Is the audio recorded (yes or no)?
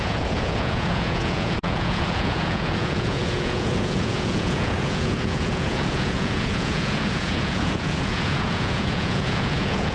no